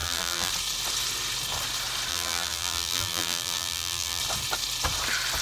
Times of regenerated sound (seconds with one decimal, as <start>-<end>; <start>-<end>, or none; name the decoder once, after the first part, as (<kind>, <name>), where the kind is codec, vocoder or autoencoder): 0.0-0.5 (vocoder, BigVGAN v2); 2.1-4.2